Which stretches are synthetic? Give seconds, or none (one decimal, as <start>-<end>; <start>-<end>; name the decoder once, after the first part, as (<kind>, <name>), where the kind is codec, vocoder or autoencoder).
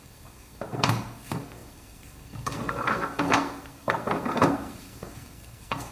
0.0-5.9 (codec, SNAC)